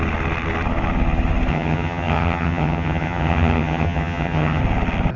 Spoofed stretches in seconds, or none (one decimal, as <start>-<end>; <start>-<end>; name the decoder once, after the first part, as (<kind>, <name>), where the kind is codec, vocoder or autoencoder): 1.5-4.6 (vocoder, HiFi-GAN)